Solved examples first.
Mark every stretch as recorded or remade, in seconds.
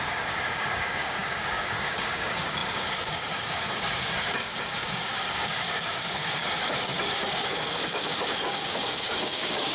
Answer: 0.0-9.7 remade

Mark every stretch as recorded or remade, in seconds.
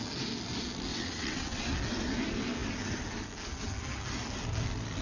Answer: 0.0-0.9 recorded; 0.9-1.6 remade; 1.6-5.0 recorded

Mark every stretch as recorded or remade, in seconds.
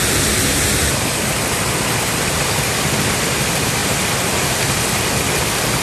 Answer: 0.0-0.5 recorded; 0.5-1.2 remade; 1.2-5.8 recorded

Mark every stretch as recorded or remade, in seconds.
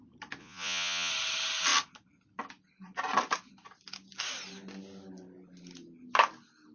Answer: 0.0-0.4 recorded; 0.4-1.1 remade; 1.1-6.7 recorded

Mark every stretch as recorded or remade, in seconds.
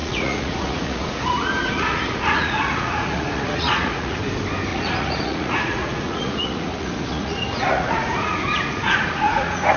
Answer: 0.0-4.2 remade; 4.2-4.7 recorded; 4.7-9.8 remade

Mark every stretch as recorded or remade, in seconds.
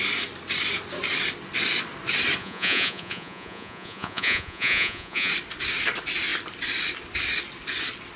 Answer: 0.0-2.4 recorded; 2.4-5.3 remade; 5.3-8.2 recorded